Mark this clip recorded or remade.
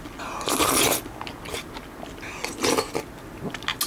recorded